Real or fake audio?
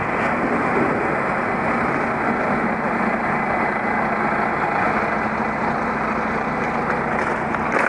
real